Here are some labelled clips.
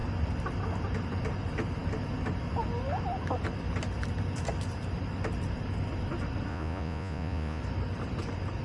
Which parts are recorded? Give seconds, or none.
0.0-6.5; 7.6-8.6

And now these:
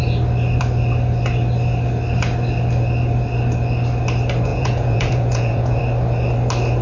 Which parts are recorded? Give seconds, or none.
0.0-4.5; 5.8-6.8

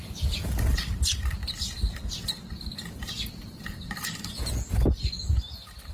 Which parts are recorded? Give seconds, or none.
0.0-5.9

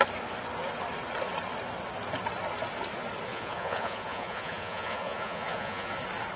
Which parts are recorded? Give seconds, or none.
0.0-3.3; 6.0-6.4

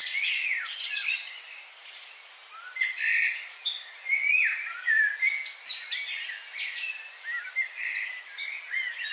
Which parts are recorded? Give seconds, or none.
0.8-9.1